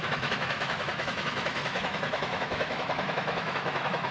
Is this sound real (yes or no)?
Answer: no